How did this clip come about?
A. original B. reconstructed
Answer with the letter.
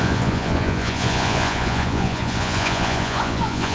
B